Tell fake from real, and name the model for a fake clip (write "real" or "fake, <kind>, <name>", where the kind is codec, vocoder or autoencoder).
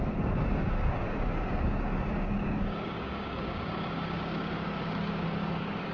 fake, codec, DAC